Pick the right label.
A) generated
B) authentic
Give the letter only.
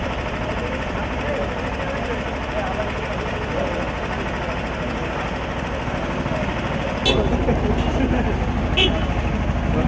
B